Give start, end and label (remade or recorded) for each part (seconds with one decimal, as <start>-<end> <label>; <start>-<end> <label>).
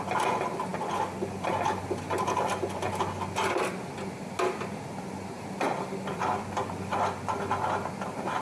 0.0-8.4 recorded